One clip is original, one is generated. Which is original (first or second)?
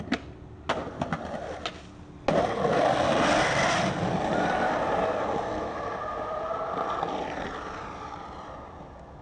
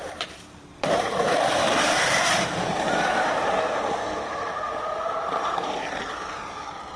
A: first